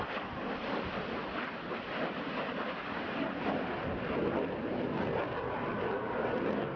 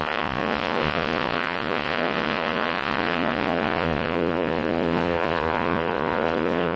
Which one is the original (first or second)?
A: first